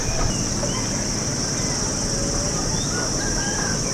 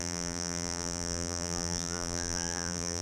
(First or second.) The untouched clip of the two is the first